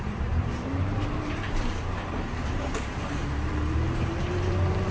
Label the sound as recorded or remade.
remade